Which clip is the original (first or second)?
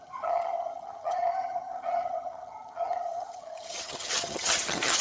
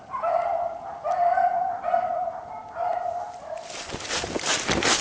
second